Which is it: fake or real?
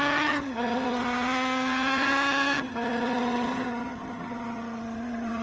fake